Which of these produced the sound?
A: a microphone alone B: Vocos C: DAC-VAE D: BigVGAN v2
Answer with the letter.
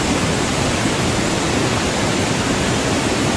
A